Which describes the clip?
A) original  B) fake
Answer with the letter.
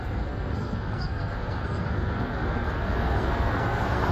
B